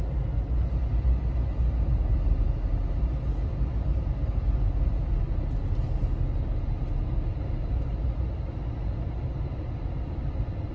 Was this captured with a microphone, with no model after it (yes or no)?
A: yes